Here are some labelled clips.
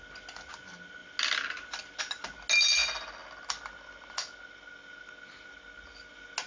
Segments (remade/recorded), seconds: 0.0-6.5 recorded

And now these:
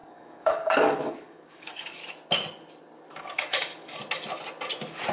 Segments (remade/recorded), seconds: 0.0-2.0 remade; 2.0-3.2 recorded; 3.2-4.0 remade; 4.0-5.1 recorded

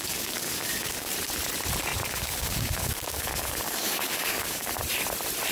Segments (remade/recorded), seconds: 0.0-1.1 remade; 1.1-1.9 recorded; 1.9-4.7 remade; 4.7-5.5 recorded

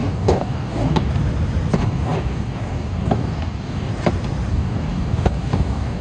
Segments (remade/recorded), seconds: 0.0-1.1 remade; 1.1-1.7 recorded; 1.7-3.9 remade; 3.9-4.5 recorded; 4.5-6.0 remade

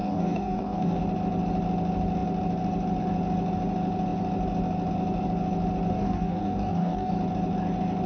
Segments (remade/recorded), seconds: 0.0-1.0 remade; 1.0-5.9 recorded; 5.9-7.1 remade; 7.1-8.1 recorded